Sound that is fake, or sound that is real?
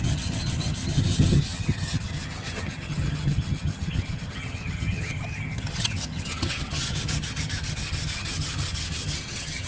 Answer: fake